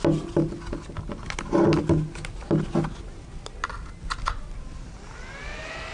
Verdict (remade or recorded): recorded